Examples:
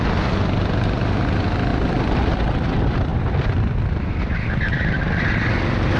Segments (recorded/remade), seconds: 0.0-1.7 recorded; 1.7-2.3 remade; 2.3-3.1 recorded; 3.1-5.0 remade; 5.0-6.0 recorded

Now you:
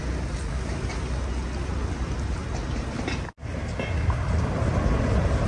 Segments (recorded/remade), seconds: 0.0-5.5 recorded

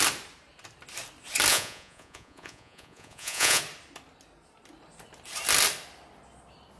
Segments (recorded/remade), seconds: 0.0-1.5 recorded; 1.5-3.6 remade; 3.6-6.8 recorded

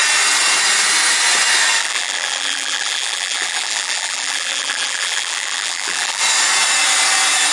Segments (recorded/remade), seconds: 0.0-1.8 recorded; 1.8-6.2 remade; 6.2-7.5 recorded

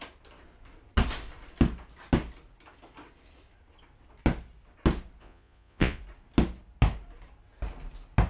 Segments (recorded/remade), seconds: 0.0-5.2 recorded; 5.2-6.0 remade; 6.0-8.3 recorded